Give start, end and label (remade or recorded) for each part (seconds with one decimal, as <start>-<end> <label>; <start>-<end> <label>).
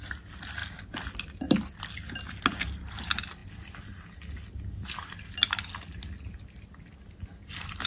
0.0-7.9 recorded